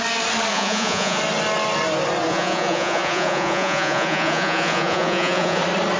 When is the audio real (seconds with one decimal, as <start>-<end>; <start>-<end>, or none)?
0.0-0.5; 1.2-2.3; 5.6-6.0